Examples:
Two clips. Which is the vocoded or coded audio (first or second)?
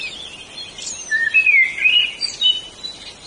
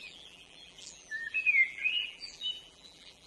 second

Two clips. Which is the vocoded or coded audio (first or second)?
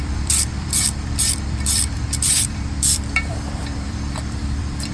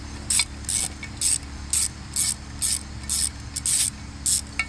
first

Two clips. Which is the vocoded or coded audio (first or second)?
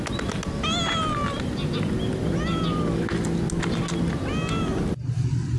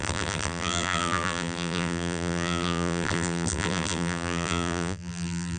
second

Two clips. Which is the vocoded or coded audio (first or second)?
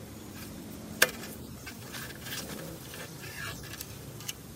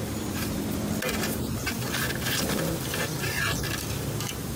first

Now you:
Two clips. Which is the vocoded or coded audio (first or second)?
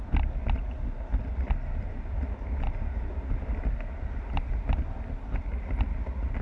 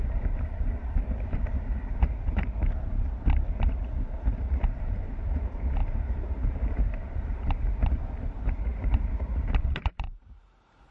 second